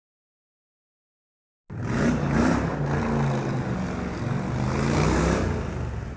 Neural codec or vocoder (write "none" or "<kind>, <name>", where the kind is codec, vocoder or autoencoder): none